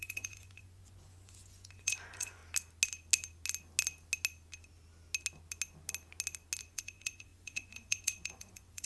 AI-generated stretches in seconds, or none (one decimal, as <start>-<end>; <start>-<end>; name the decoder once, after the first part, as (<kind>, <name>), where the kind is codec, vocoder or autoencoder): 0.0-2.4 (vocoder, Vocos); 6.6-8.9